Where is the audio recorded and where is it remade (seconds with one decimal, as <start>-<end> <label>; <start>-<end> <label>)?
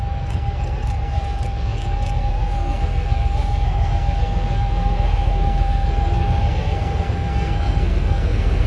0.0-8.7 remade